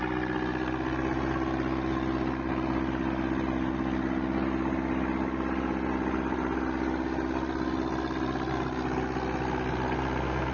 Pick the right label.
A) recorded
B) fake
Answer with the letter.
A